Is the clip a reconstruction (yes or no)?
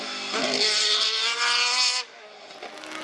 no